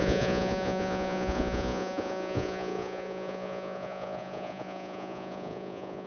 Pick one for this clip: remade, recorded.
remade